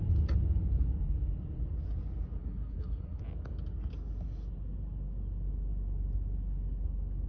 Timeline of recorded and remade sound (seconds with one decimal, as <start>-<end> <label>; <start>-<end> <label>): 0.0-2.4 recorded; 2.4-3.2 remade; 3.2-7.3 recorded